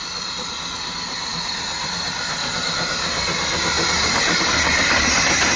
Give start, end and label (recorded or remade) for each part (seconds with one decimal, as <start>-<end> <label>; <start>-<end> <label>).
0.0-5.6 recorded